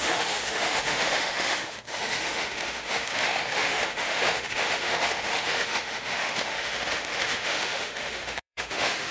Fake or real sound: fake